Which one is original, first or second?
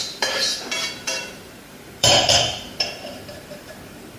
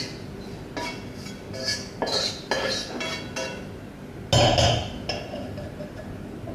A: second